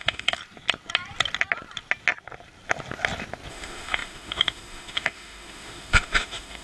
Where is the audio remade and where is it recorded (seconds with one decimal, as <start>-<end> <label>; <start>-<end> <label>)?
0.0-0.4 remade; 0.4-3.5 recorded; 3.5-6.6 remade